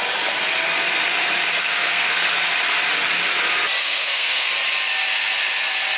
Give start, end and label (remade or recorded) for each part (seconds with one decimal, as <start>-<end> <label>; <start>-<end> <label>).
0.0-1.6 recorded; 1.6-2.2 remade; 2.2-3.8 recorded; 3.8-4.5 remade; 4.5-6.0 recorded